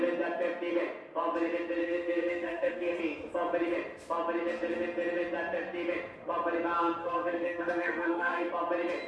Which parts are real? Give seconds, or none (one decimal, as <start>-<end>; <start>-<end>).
0.0-1.8; 3.0-7.0; 8.5-9.1